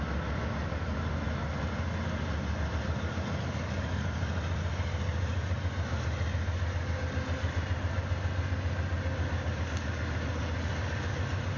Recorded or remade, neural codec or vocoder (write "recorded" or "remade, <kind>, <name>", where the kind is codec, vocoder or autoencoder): recorded